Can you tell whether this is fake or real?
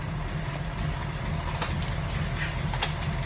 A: real